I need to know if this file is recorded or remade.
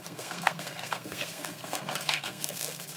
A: remade